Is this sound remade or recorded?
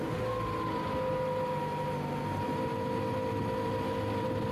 recorded